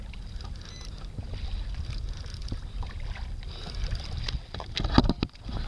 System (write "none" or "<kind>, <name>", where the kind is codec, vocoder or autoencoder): none